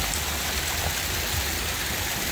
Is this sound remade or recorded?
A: recorded